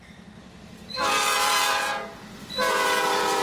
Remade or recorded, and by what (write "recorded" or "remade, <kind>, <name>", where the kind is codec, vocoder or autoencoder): remade, vocoder, BigVGAN v2